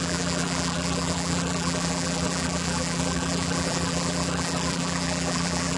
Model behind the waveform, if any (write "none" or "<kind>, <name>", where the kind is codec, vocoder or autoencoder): vocoder, BigVGAN v2